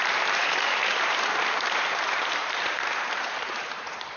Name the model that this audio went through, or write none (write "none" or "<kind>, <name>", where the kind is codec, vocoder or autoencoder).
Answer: vocoder, BigVGAN v2